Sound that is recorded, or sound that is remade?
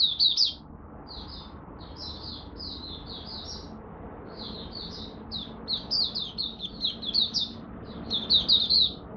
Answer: recorded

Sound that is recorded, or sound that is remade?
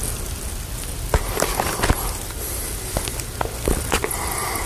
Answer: recorded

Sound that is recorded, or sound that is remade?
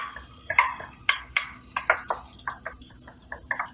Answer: recorded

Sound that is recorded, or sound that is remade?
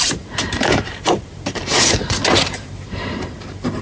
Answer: remade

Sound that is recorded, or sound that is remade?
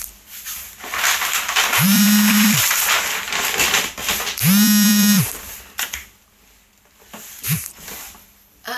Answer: remade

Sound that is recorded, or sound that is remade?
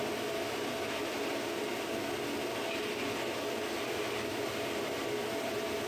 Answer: recorded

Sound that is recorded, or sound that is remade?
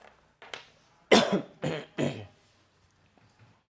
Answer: recorded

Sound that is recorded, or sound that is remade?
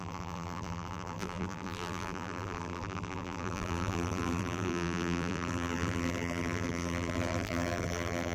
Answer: remade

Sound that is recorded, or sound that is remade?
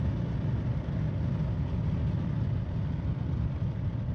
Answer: recorded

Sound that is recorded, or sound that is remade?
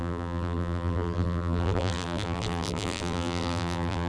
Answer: remade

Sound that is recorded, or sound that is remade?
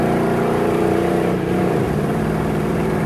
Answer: remade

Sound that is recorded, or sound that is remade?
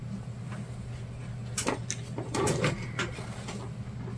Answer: recorded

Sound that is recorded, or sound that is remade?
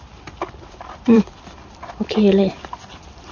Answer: remade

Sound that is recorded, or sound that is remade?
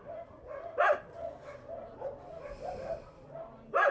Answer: recorded